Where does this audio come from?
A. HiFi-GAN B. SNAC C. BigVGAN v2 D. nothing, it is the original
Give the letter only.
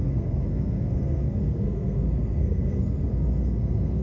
B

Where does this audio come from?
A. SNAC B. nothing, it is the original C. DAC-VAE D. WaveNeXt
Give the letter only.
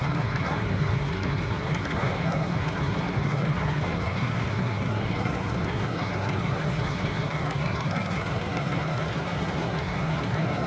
A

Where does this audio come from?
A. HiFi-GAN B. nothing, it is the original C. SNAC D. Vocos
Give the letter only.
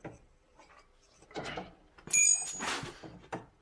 B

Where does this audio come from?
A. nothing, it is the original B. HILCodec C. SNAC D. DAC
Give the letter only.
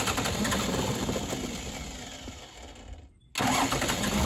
A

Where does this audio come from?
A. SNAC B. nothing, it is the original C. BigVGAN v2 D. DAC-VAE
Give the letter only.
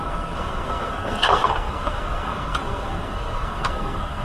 A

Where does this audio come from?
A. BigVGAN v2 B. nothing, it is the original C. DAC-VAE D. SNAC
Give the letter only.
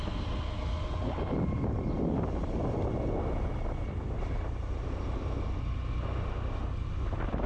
B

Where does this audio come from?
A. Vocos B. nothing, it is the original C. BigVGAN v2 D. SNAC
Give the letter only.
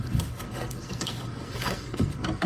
D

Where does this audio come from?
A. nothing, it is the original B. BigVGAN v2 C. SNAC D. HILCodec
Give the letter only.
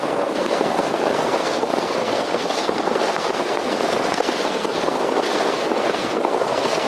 C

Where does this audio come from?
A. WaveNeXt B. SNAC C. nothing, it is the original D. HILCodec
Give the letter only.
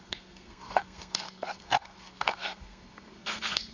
B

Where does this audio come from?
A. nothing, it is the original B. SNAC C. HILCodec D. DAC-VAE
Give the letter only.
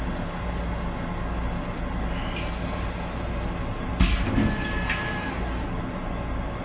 A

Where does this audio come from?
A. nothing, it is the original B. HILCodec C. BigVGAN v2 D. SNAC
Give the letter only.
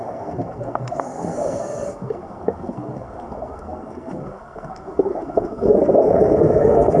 D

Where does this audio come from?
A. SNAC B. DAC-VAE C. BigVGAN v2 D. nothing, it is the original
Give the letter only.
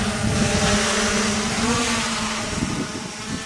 D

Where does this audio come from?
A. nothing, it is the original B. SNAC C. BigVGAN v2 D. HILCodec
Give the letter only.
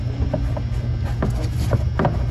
A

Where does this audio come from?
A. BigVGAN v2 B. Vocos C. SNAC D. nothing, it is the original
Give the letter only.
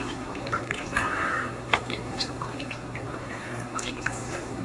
C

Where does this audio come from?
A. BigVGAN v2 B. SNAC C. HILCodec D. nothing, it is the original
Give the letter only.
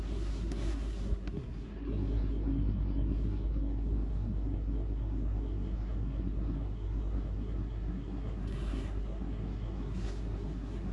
B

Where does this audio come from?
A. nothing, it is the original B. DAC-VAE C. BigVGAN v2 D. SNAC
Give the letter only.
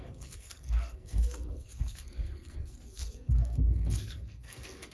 D